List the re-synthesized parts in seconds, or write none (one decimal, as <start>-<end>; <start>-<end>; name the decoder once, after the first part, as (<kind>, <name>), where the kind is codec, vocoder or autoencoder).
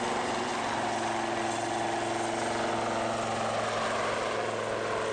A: none